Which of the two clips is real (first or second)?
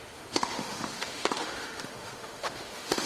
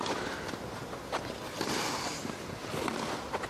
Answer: second